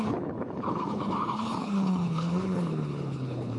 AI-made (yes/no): yes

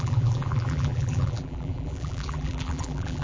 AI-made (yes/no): yes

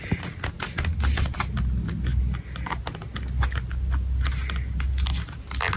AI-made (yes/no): no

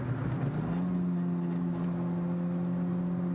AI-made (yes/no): no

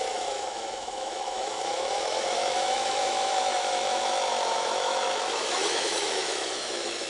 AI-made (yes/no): yes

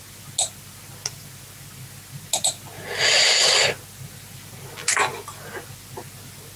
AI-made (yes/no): no